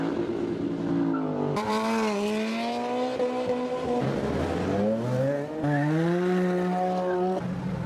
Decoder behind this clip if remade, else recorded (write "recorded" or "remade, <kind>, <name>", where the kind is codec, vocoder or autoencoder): recorded